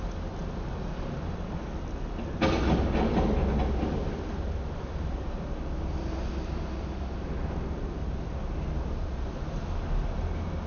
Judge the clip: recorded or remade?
recorded